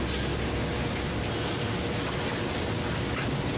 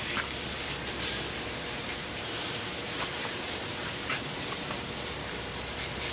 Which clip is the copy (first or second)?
second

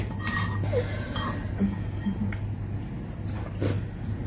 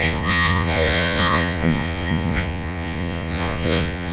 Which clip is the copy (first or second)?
second